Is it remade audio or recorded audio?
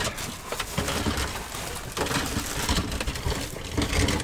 recorded